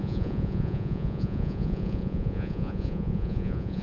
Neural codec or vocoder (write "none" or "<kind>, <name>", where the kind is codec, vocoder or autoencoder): vocoder, Vocos